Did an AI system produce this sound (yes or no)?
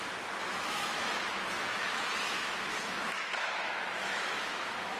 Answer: yes